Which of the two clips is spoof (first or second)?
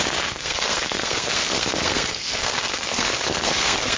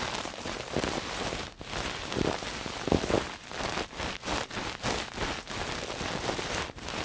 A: first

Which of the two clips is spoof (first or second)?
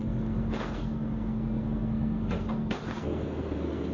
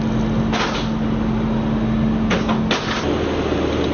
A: first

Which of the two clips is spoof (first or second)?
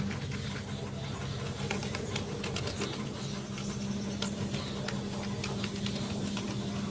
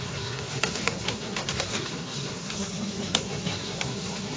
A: second